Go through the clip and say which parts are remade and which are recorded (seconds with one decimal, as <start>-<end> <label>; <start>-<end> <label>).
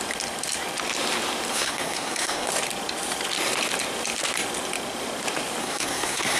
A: 0.0-1.5 recorded; 1.5-2.5 remade; 2.5-5.6 recorded; 5.6-6.4 remade